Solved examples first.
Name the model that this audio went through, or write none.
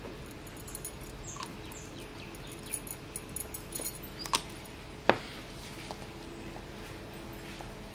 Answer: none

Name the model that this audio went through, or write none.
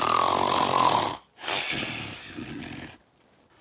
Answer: none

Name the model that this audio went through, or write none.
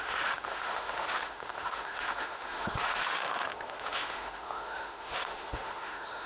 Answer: autoencoder, DAC-VAE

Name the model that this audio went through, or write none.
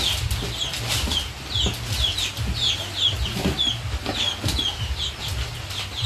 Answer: none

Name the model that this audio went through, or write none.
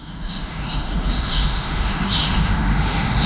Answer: autoencoder, DAC-VAE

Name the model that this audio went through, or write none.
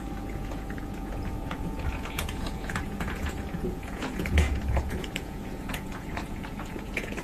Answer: vocoder, Vocos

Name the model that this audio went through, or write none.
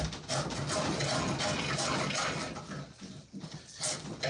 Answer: none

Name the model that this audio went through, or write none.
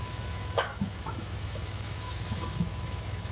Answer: autoencoder, DAC-VAE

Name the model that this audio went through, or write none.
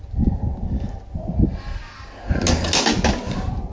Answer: none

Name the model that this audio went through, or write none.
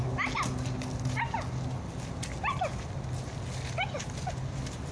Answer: none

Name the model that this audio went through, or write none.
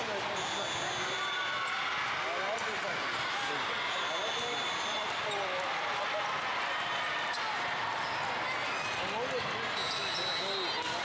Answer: none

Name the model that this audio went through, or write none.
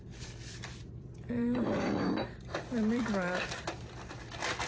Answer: vocoder, BigVGAN v2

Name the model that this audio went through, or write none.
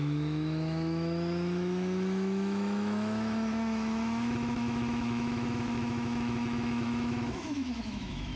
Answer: autoencoder, DAC-VAE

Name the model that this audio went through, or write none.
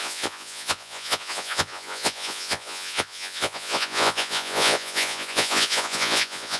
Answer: vocoder, Vocos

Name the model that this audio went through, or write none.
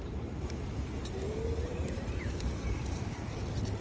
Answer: vocoder, BigVGAN v2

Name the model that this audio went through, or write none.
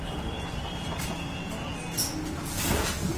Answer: none